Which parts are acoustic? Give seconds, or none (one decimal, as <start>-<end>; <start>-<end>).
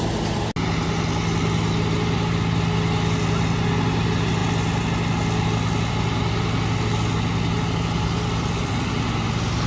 0.0-9.7